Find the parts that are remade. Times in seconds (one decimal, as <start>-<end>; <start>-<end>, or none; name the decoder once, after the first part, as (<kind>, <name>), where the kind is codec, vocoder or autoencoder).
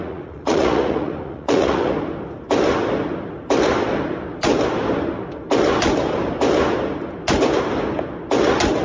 0.0-1.9 (vocoder, Vocos)